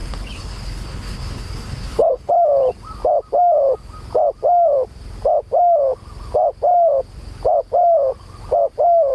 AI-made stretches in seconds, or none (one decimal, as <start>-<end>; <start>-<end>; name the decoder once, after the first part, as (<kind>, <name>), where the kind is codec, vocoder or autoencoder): 0.0-2.3 (codec, HILCodec)